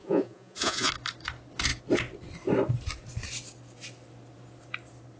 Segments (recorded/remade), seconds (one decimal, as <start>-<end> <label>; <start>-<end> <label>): 0.0-0.9 remade; 0.9-5.2 recorded